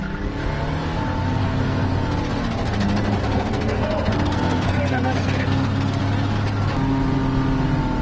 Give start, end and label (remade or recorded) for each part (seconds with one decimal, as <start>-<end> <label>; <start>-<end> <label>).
0.0-1.4 recorded; 1.4-1.9 remade; 1.9-3.2 recorded; 3.2-6.0 remade; 6.0-8.0 recorded